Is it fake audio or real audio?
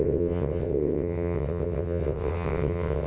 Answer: fake